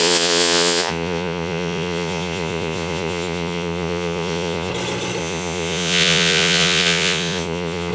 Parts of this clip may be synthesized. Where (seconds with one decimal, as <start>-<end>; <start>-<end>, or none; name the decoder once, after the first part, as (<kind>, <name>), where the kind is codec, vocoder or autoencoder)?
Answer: 0.0-4.7 (vocoder, Vocos); 5.2-7.9